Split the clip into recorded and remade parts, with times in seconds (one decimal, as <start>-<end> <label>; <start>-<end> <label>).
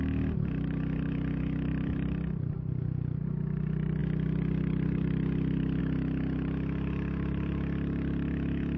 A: 0.0-8.8 recorded